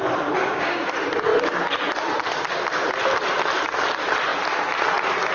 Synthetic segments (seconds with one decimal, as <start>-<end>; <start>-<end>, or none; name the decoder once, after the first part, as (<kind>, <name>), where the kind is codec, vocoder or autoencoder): 0.4-0.9 (codec, DAC)